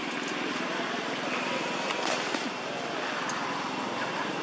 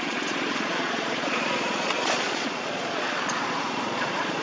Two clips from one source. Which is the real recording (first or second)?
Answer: first